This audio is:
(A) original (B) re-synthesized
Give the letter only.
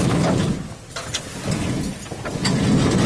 A